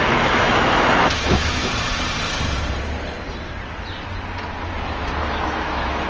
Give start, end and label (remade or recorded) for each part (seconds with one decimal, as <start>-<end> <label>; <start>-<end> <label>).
0.0-1.6 remade; 1.6-5.3 recorded; 5.3-6.1 remade